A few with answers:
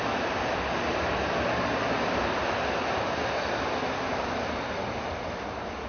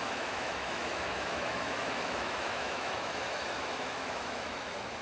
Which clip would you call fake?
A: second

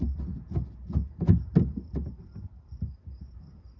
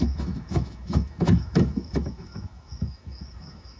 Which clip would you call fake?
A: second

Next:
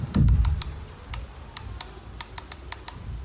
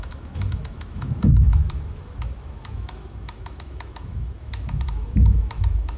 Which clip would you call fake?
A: second